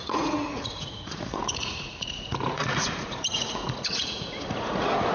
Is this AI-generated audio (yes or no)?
yes